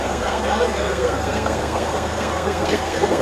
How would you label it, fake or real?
fake